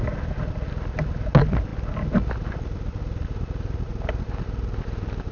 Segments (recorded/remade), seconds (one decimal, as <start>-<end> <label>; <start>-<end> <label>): 0.0-5.3 recorded